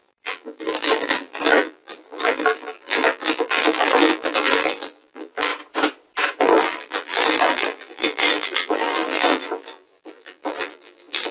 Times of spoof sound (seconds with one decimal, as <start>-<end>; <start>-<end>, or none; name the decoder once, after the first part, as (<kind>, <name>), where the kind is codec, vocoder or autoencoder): 0.0-5.5 (vocoder, BigVGAN v2); 6.4-11.3